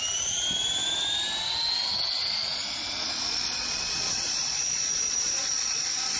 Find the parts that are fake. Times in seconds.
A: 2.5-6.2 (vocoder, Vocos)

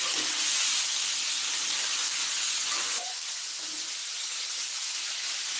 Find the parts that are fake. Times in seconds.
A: 2.2-3.2 (vocoder, Vocos)